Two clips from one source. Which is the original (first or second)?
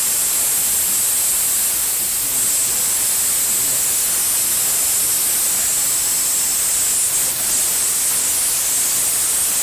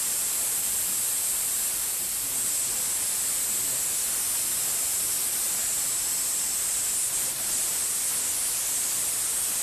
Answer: first